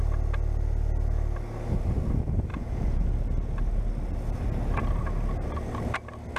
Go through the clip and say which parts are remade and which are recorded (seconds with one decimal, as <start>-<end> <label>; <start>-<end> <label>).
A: 0.0-2.5 recorded; 2.5-3.1 remade; 3.1-6.4 recorded